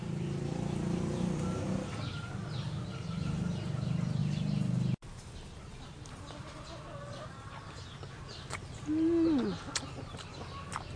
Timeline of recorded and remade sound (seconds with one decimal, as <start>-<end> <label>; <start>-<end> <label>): 0.0-11.0 recorded

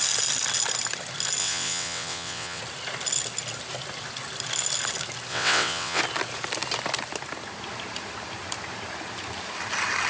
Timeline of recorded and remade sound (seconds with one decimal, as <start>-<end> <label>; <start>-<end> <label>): 0.0-1.4 recorded; 1.4-2.6 remade; 2.6-5.3 recorded; 5.3-6.0 remade; 6.0-10.1 recorded

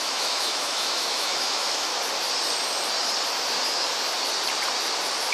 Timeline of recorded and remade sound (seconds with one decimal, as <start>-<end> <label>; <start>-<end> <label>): 0.0-1.9 remade; 1.9-5.3 recorded

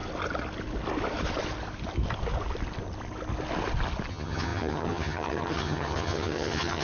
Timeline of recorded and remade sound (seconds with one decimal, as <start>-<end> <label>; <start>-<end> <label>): 0.0-4.1 recorded; 4.1-6.8 remade

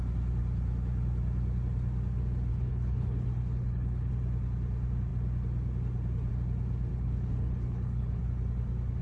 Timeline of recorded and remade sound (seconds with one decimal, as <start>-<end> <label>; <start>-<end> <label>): 0.0-2.5 recorded; 2.5-4.1 remade; 4.1-6.9 recorded; 6.9-8.2 remade; 8.2-9.0 recorded